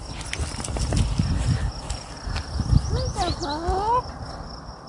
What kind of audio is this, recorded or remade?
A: recorded